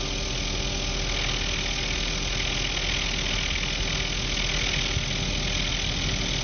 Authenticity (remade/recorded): recorded